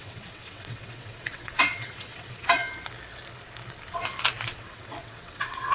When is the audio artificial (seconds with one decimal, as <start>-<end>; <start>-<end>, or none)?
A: 0.0-2.6; 4.5-5.7